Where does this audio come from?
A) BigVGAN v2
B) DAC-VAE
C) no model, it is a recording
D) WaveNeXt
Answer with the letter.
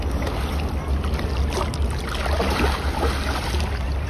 C